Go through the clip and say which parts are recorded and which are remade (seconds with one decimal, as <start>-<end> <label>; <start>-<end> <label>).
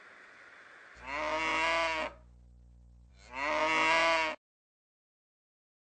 0.0-5.8 recorded